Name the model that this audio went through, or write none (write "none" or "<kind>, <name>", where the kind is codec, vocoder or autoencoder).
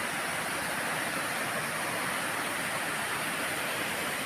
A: none